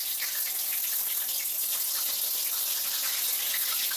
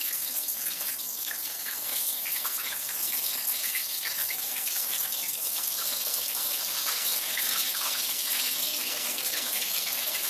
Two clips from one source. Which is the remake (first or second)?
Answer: second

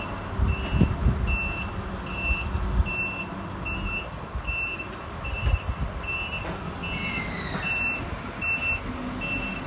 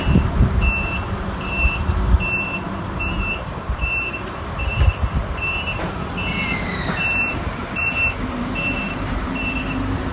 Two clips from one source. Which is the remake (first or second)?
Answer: second